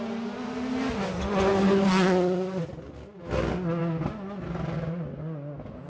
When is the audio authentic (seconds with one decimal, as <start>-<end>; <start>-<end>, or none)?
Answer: 0.0-5.9